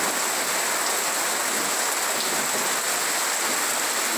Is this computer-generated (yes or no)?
no